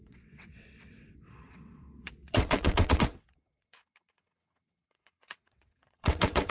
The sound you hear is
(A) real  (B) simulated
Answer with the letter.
B